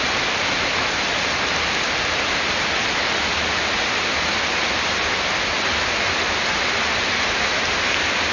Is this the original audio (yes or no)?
yes